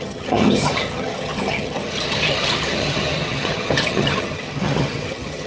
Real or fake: fake